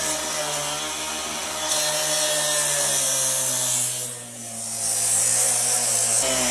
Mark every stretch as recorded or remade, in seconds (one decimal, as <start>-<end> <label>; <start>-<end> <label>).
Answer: 0.0-6.5 recorded

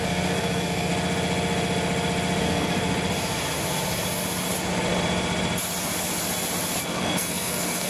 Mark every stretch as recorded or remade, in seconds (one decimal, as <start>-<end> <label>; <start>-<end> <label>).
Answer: 0.0-0.9 remade; 0.9-2.4 recorded; 2.4-2.8 remade; 2.8-6.8 recorded; 6.8-7.9 remade